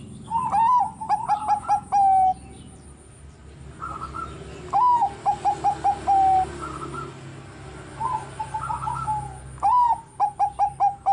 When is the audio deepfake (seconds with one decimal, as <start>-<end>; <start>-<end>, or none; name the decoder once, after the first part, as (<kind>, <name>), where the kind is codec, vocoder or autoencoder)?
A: none